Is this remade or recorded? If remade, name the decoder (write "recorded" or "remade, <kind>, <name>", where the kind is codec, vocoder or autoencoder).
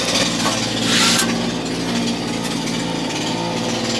recorded